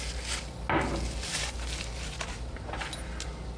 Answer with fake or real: real